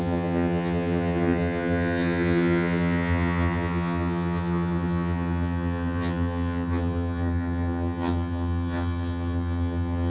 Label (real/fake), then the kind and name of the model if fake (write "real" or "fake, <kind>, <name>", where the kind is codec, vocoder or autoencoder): fake, vocoder, HiFi-GAN